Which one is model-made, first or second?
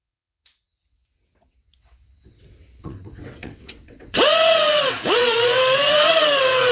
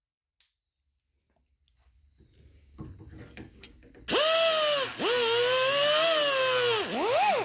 first